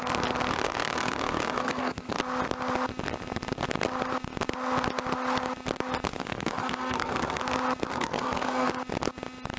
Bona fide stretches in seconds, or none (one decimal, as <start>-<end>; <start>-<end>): 0.0-0.5; 2.2-6.1; 7.4-7.9; 8.7-9.6